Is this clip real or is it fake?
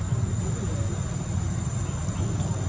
real